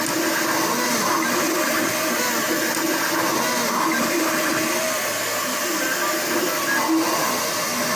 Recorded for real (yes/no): yes